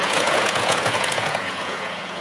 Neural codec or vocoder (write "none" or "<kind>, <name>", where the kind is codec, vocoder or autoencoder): vocoder, Vocos